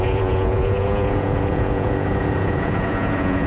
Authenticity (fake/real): fake